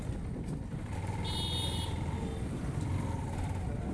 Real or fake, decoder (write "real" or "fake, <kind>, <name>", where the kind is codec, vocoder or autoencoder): real